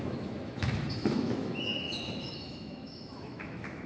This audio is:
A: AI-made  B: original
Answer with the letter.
A